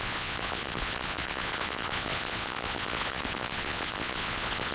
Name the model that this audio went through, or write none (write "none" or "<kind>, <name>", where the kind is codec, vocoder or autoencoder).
vocoder, Vocos